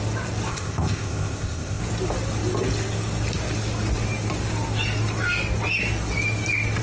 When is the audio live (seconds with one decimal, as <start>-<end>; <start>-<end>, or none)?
0.0-0.5; 1.8-6.8